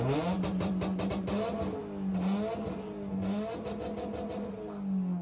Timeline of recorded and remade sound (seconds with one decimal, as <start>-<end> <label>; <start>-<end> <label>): 0.0-5.2 recorded